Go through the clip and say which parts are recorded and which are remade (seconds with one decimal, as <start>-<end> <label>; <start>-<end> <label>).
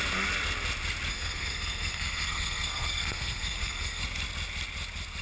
0.0-1.1 recorded; 1.1-4.0 remade; 4.0-5.2 recorded